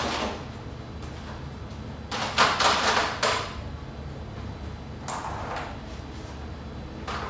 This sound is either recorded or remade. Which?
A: recorded